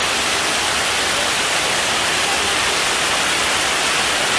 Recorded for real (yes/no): yes